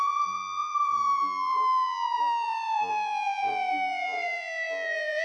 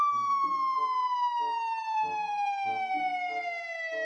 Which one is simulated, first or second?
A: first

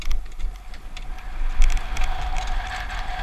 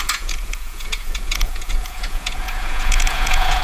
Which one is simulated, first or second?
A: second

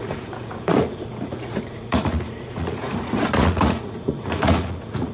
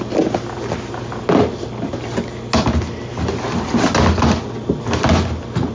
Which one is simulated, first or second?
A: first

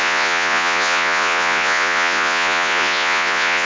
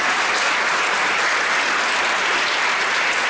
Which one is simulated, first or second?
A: first